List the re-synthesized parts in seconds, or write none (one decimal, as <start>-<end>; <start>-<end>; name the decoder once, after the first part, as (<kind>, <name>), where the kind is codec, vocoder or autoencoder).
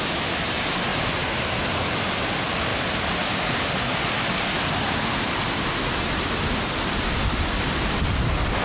none